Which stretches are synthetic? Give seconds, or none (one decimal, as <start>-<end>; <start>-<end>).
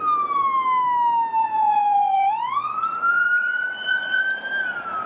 1.4-4.2